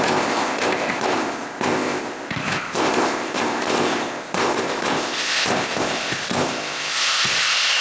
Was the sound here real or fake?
fake